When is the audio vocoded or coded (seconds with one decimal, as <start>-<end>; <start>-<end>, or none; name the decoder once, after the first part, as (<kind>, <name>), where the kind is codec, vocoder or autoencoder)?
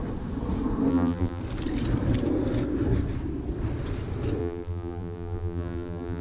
0.9-1.4 (vocoder, BigVGAN v2); 4.4-6.2